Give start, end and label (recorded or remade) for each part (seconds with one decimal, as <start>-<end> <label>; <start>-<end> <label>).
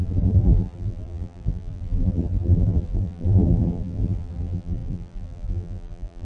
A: 0.0-6.2 remade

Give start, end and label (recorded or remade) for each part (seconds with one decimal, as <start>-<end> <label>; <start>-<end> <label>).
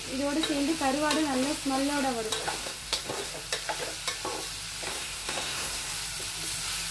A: 0.0-2.6 recorded; 2.6-3.3 remade; 3.3-4.9 recorded; 4.9-5.9 remade; 5.9-6.9 recorded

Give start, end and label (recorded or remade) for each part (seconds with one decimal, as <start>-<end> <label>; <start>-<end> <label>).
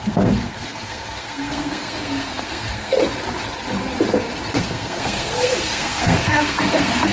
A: 0.0-3.0 remade; 3.0-4.5 recorded; 4.5-7.1 remade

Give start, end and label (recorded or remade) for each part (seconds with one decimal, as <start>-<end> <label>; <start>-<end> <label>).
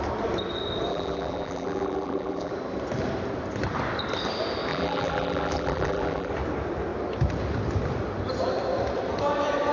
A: 0.0-0.9 recorded; 0.9-2.5 remade; 2.5-4.7 recorded; 4.7-6.3 remade; 6.3-9.7 recorded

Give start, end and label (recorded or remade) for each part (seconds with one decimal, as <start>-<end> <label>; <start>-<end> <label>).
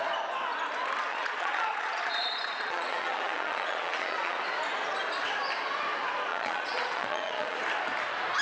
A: 0.0-1.1 recorded; 1.1-4.4 remade; 4.4-6.3 recorded; 6.3-7.6 remade; 7.6-8.4 recorded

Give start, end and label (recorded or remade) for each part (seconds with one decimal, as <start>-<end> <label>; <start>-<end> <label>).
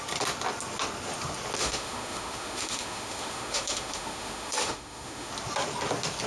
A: 0.0-1.6 recorded; 1.6-5.3 remade; 5.3-6.3 recorded